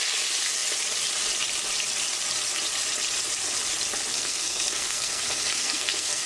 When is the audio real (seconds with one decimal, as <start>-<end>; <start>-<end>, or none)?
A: 0.0-4.1